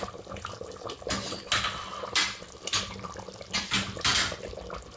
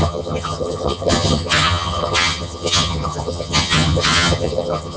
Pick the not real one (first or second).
second